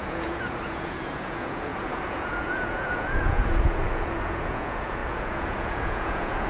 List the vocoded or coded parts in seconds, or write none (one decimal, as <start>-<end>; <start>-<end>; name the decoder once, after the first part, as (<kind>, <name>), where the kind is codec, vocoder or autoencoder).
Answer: 0.0-6.5 (vocoder, Vocos)